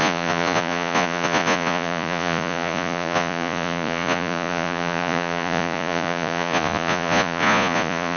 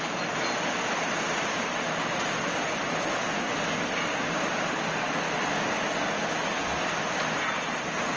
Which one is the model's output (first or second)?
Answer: first